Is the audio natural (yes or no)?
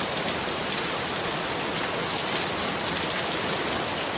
yes